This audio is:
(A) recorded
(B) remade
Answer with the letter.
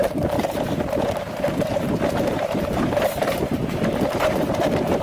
B